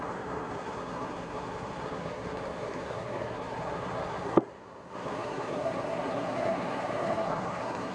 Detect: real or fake fake